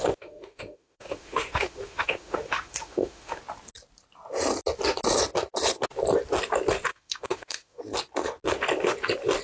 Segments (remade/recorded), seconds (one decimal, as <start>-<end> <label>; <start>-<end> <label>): 0.0-3.4 remade; 3.4-6.9 recorded; 6.9-7.8 remade; 7.8-9.4 recorded